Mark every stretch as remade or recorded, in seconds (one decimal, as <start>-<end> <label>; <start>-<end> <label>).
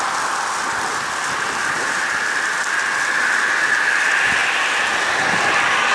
0.0-5.9 recorded